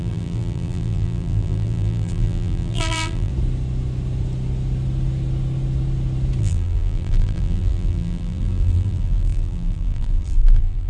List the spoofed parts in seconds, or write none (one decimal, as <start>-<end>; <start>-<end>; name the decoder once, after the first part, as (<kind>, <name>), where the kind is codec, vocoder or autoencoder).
0.0-3.3 (vocoder, BigVGAN v2); 6.4-10.9